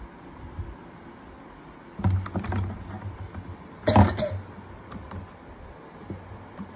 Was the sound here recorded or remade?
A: recorded